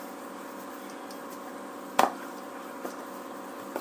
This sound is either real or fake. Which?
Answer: real